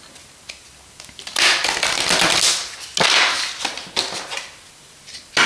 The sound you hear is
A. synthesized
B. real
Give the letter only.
B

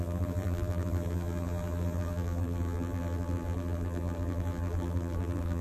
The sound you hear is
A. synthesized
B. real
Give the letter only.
A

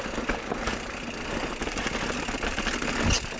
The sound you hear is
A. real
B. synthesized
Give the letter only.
A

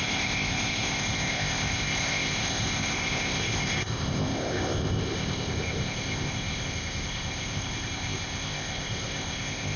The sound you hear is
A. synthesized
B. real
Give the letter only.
A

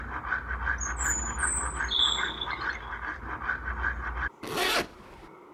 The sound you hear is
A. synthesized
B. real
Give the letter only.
B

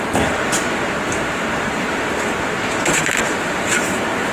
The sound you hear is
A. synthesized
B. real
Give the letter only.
B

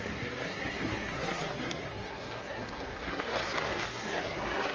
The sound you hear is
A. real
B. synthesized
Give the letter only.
B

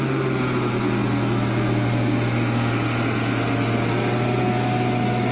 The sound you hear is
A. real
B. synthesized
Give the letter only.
A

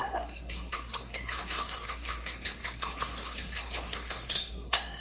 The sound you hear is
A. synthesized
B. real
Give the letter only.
A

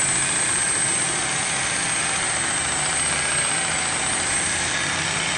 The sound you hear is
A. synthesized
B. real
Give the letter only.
B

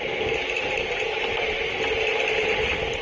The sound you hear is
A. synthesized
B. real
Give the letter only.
B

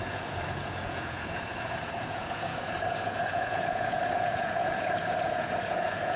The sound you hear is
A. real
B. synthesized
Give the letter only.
B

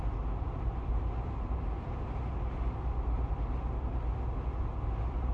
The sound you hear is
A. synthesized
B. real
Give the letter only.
B